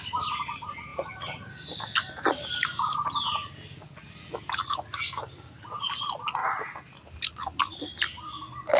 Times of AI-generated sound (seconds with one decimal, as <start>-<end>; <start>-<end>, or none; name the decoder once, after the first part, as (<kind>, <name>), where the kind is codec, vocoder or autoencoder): none